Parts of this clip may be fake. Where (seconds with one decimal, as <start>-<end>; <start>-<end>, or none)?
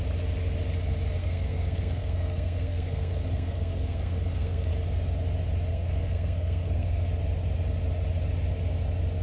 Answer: 1.2-4.7; 5.7-7.1